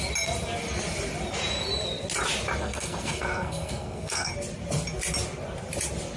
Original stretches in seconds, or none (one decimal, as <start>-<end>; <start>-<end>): 0.0-2.6; 4.3-6.2